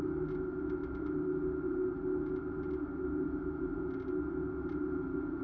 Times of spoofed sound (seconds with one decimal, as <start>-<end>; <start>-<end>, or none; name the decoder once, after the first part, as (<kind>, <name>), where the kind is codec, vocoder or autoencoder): none